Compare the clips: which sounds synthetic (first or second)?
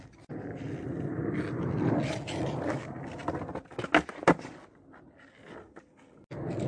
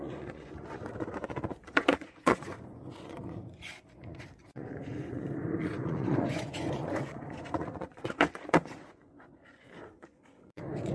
second